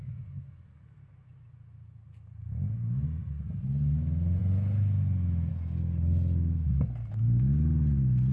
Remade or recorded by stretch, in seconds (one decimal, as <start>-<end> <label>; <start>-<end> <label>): 0.0-8.3 recorded